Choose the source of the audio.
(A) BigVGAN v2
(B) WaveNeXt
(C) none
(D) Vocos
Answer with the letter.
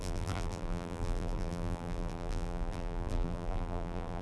A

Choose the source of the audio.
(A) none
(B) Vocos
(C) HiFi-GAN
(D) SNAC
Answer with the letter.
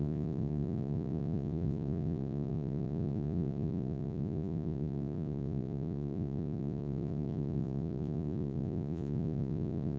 B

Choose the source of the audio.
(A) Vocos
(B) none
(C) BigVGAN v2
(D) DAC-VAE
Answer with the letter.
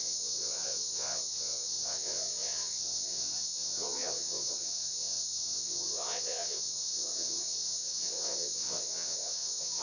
A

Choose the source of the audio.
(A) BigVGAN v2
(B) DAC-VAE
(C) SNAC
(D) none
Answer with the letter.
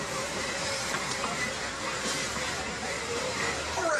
A